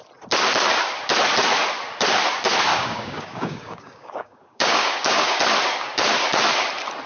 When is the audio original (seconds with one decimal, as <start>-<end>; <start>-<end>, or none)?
0.0-2.7; 5.4-7.1

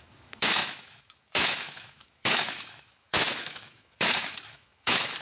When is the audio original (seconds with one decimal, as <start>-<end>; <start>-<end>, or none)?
none

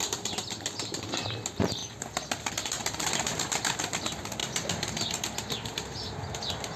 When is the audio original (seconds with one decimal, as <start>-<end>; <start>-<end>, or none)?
0.0-6.8